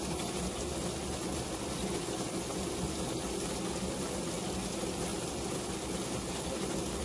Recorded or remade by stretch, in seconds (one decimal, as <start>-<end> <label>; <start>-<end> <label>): 0.0-7.0 recorded